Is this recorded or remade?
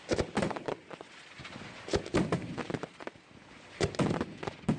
recorded